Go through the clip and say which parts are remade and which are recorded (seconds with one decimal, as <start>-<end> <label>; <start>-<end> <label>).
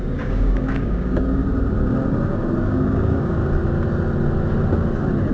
0.0-1.4 remade; 1.4-2.6 recorded; 2.6-3.4 remade; 3.4-5.3 recorded